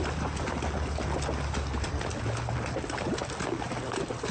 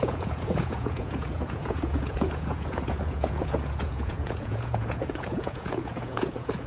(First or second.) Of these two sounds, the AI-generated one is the second